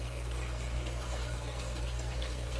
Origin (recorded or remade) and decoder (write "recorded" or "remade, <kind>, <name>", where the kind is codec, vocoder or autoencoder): remade, codec, SNAC